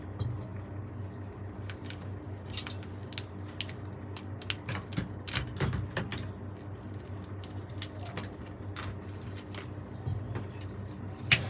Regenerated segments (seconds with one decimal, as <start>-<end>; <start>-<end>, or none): none